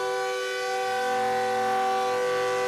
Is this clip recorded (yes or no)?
yes